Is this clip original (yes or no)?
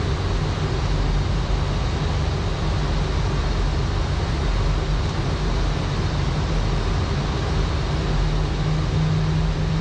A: yes